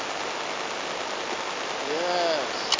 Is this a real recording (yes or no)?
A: yes